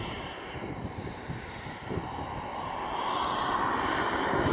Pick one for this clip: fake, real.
real